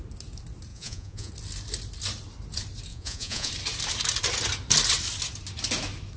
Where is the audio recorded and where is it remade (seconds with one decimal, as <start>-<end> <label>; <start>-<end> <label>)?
0.0-0.7 recorded; 0.7-1.3 remade; 1.3-2.9 recorded; 2.9-3.5 remade; 3.5-6.2 recorded